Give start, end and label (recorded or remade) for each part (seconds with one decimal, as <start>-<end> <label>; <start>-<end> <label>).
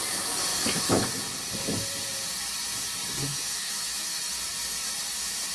0.0-0.5 recorded; 0.5-1.0 remade; 1.0-3.3 recorded; 3.3-4.3 remade; 4.3-5.5 recorded